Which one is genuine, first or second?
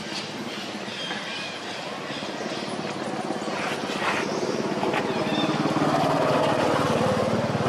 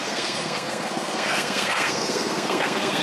first